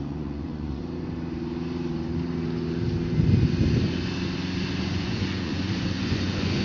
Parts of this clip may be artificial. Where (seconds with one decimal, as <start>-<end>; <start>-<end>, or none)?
0.0-0.8; 4.8-6.6